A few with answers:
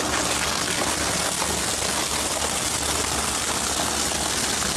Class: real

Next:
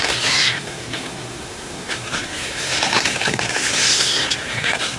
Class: fake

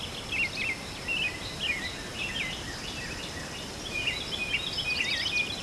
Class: real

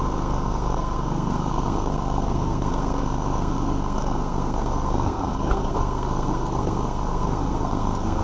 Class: fake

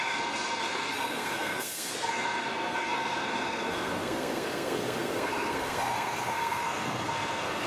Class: fake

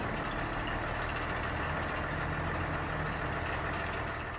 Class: real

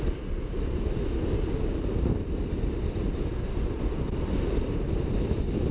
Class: real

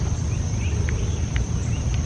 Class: real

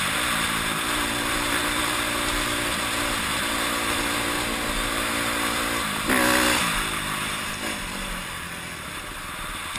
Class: real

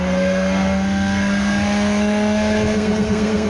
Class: fake